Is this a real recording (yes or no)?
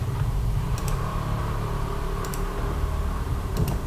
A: no